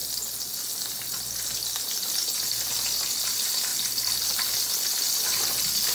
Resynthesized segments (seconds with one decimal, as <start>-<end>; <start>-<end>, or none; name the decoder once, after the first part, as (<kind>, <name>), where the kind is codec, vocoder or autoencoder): none